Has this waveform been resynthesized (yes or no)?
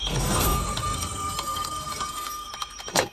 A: yes